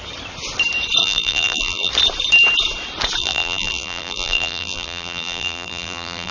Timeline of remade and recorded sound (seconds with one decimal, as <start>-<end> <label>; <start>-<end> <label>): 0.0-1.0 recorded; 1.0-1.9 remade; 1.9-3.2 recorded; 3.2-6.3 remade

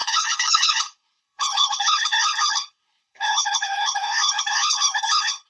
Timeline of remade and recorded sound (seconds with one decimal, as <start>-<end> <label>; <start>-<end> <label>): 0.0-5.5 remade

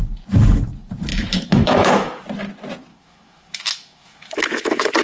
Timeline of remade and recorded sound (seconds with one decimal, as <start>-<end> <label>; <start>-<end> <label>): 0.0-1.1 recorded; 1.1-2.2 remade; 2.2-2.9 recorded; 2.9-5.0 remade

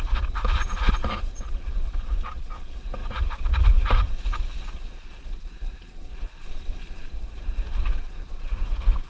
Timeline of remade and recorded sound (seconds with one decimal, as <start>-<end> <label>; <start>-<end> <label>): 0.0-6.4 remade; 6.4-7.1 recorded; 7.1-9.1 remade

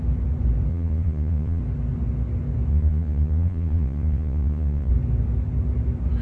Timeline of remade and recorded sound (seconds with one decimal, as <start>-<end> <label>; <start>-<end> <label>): 0.0-0.7 recorded; 0.7-1.6 remade; 1.6-2.7 recorded; 2.7-4.9 remade; 4.9-6.2 recorded